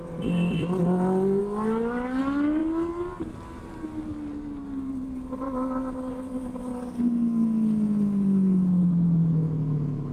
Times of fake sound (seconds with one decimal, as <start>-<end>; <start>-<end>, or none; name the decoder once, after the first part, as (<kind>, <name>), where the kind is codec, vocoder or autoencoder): 2.6-6.6 (vocoder, BigVGAN v2)